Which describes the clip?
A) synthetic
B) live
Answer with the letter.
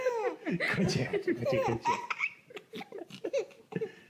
B